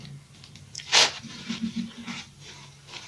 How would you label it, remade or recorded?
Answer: recorded